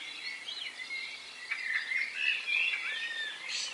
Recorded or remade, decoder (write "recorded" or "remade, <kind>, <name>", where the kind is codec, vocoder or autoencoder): recorded